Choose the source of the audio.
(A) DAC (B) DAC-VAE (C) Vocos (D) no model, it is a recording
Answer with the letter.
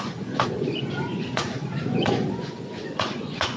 C